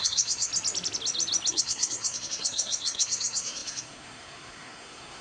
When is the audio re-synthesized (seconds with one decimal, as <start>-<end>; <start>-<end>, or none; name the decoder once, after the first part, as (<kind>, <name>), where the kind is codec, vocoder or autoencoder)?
0.0-0.5 (codec, SNAC); 1.5-5.2